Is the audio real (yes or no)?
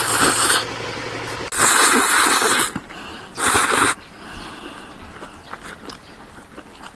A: yes